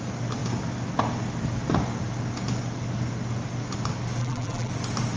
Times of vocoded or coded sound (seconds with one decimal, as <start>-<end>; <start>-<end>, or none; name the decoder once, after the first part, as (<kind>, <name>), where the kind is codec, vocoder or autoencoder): 4.2-4.7 (vocoder, BigVGAN v2)